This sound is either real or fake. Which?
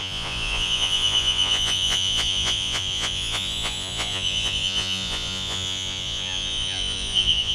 fake